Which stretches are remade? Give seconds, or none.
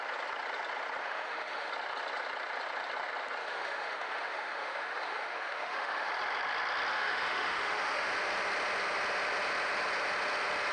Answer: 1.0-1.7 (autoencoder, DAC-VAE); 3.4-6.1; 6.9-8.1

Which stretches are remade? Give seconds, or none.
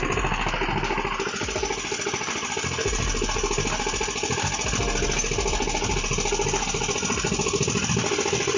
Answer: none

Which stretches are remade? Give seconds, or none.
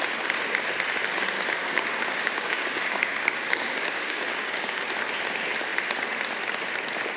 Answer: 1.6-4.8 (codec, DAC)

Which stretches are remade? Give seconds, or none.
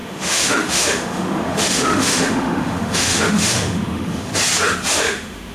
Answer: 0.0-4.3 (autoencoder, DAC-VAE); 4.9-5.5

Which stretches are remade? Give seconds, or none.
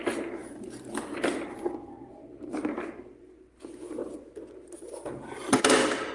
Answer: none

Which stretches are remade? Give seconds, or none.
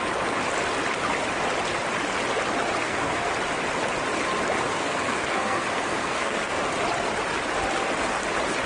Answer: 2.8-3.3 (codec, SNAC); 4.7-6.6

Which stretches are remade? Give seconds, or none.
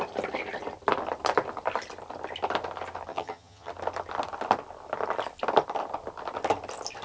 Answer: 3.1-3.7 (vocoder, HiFi-GAN)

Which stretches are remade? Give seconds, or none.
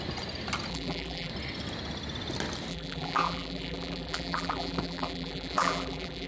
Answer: 0.7-1.3 (vocoder, BigVGAN v2); 2.7-6.3